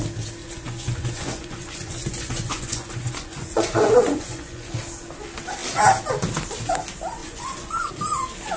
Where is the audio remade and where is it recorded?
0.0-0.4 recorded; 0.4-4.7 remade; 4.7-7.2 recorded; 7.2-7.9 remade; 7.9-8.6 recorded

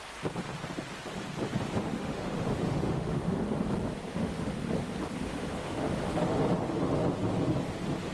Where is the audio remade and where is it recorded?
0.0-1.8 recorded; 1.8-3.4 remade; 3.4-4.1 recorded; 4.1-4.6 remade; 4.6-5.1 recorded; 5.1-6.1 remade; 6.1-8.1 recorded

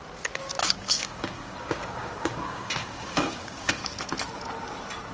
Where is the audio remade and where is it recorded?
0.0-0.6 recorded; 0.6-3.7 remade; 3.7-5.1 recorded

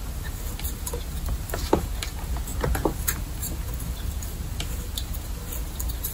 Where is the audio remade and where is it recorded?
0.0-6.1 recorded

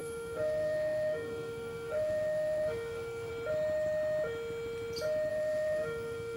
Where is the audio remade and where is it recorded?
0.0-3.3 remade; 3.3-5.3 recorded; 5.3-6.4 remade

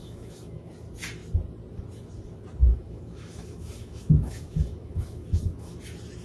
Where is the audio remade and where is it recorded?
0.0-0.7 remade; 0.7-2.6 recorded; 2.6-5.8 remade; 5.8-6.2 recorded